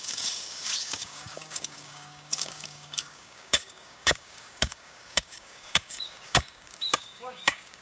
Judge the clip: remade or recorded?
remade